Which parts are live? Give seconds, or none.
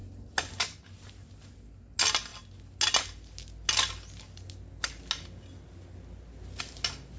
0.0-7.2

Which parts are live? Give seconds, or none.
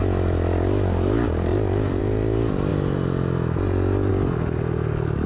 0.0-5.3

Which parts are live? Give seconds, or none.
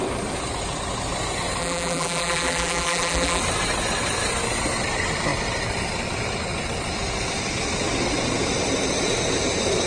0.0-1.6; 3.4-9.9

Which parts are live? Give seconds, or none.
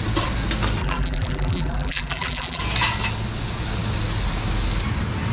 0.0-0.8; 2.6-5.3